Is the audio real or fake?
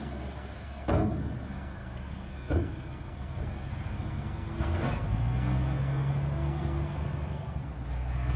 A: fake